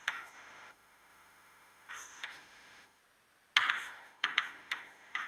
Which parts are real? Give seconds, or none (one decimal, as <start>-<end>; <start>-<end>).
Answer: 3.0-3.7